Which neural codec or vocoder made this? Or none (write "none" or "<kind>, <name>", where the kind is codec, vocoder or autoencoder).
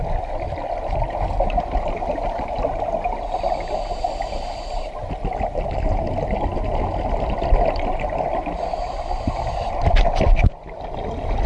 none